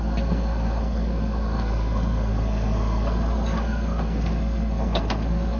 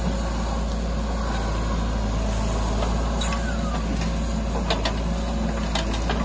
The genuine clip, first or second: second